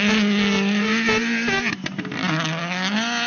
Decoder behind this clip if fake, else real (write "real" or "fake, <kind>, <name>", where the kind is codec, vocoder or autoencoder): real